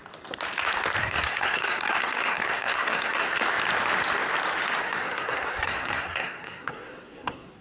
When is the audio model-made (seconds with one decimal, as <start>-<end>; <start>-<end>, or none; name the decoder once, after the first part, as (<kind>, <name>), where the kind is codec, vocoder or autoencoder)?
1.0-3.4 (codec, SNAC); 4.8-7.6